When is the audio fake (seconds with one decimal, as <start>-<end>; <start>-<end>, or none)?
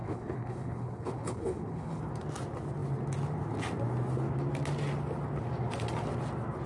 0.0-2.0